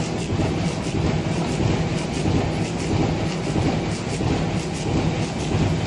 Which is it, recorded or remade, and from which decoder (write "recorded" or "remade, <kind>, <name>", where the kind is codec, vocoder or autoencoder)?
recorded